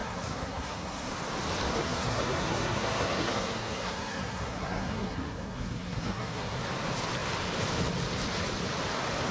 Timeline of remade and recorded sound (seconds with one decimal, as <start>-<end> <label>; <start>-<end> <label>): 0.0-1.1 remade; 1.1-1.7 recorded; 1.7-6.6 remade; 6.6-9.3 recorded